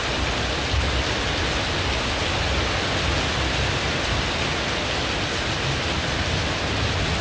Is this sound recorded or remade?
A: recorded